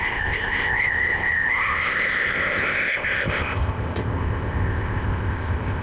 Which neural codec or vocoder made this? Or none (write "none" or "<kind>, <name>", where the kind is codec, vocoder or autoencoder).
codec, ZipCodec